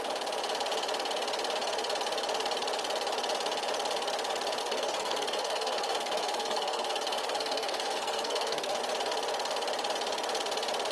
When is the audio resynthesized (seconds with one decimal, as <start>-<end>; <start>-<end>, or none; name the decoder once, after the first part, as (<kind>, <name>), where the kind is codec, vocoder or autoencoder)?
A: 4.6-8.8 (codec, SNAC)